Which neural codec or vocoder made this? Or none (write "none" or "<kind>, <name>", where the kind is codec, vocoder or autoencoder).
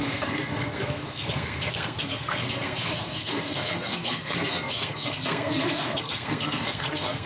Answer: codec, SNAC